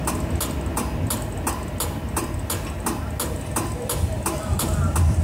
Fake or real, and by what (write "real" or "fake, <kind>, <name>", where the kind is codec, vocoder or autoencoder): real